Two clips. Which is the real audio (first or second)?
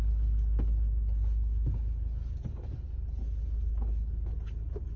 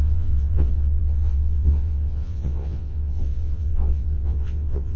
first